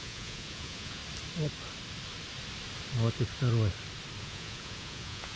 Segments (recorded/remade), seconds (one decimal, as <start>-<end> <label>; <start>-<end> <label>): 0.0-1.0 remade; 1.0-4.2 recorded; 4.2-5.4 remade